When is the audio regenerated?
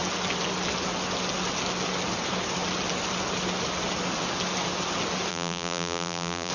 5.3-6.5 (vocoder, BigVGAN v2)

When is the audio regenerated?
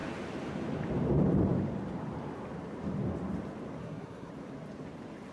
3.8-4.3 (codec, SNAC)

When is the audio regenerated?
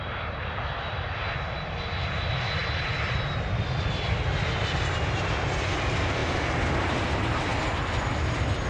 0.0-2.6 (vocoder, BigVGAN v2); 3.8-7.5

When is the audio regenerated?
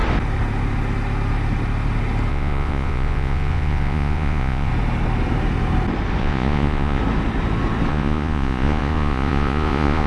2.3-4.7 (vocoder, Vocos); 6.2-7.0; 7.9-10.1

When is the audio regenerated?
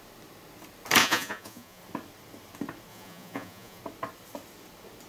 1.0-1.8 (vocoder, Vocos); 2.9-3.8